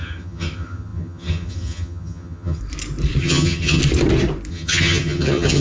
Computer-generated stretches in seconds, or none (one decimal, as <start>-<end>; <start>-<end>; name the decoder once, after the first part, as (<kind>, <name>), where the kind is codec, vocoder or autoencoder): 0.0-2.6 (vocoder, HiFi-GAN); 3.2-3.8; 4.5-5.6